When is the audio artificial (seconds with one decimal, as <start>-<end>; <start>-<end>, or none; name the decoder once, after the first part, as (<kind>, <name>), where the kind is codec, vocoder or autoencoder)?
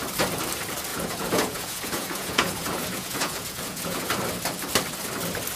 0.9-4.1 (vocoder, Vocos)